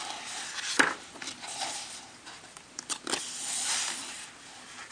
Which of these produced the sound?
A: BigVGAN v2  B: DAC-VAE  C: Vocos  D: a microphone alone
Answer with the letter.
A